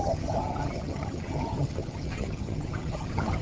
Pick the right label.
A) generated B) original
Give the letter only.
A